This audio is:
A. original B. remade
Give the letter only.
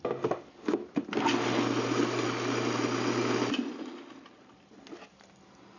A